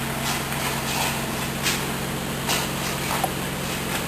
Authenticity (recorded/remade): recorded